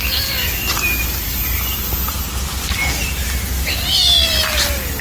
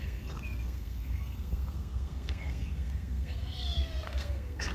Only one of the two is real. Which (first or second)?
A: first